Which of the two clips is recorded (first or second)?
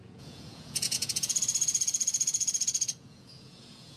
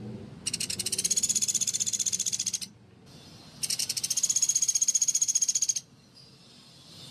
second